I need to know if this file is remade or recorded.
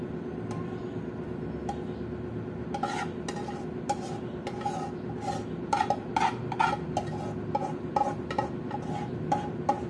recorded